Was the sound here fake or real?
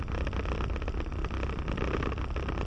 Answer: real